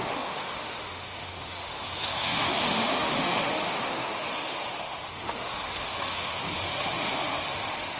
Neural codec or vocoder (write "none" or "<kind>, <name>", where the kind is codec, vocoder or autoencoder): autoencoder, DAC-VAE